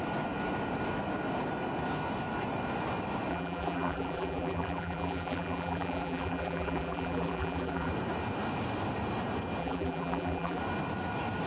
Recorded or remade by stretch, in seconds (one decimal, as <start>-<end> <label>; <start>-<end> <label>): 0.0-3.3 recorded; 3.3-7.9 remade; 7.9-9.6 recorded; 9.6-10.6 remade; 10.6-11.5 recorded